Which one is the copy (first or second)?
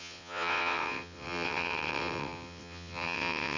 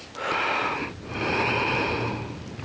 first